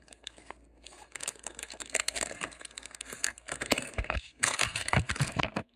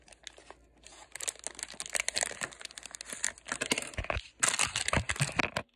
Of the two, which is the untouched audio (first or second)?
second